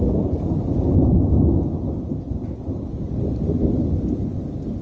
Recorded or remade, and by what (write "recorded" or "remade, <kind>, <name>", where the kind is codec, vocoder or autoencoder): recorded